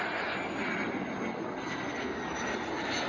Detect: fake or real real